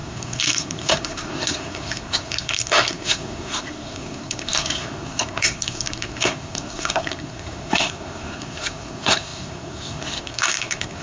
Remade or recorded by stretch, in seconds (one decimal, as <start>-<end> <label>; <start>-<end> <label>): 0.0-11.0 remade